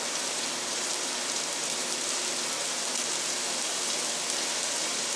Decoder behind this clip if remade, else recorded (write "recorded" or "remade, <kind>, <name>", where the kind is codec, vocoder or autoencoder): recorded